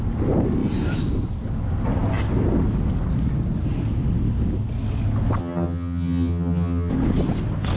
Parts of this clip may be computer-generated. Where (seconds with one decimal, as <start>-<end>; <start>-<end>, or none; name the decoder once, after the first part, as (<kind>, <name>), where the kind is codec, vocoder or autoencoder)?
5.4-6.9 (vocoder, HiFi-GAN)